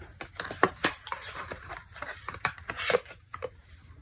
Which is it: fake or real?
fake